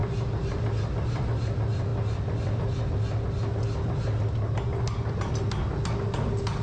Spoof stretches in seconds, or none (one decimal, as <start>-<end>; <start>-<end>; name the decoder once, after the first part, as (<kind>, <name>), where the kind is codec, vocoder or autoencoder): none